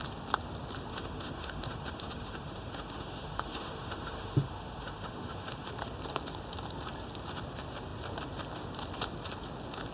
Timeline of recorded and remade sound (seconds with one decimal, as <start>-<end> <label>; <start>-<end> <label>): 0.0-0.9 recorded; 0.9-5.7 remade; 5.7-9.9 recorded